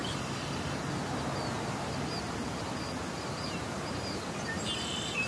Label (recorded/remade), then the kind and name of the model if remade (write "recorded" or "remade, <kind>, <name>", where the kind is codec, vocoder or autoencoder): recorded